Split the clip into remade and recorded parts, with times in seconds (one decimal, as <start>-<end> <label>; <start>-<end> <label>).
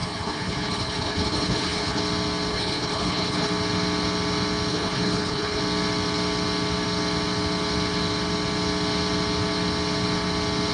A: 0.0-2.0 remade; 2.0-2.5 recorded; 2.5-3.5 remade; 3.5-4.7 recorded; 4.7-5.6 remade; 5.6-10.7 recorded